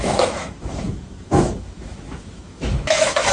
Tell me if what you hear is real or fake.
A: fake